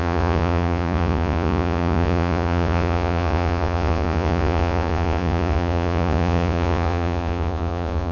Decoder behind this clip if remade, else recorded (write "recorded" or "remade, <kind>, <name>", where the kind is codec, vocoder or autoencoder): remade, vocoder, Vocos